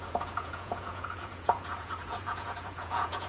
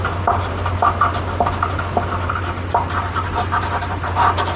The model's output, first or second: first